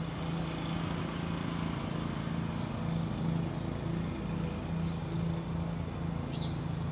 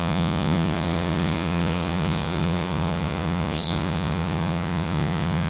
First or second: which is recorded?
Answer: first